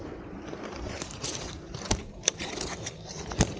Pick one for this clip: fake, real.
fake